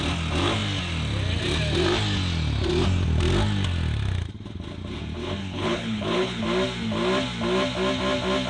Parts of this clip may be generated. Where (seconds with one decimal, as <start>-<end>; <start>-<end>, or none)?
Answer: 5.4-6.4